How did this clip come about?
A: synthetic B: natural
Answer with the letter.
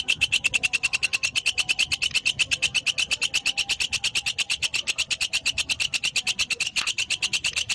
B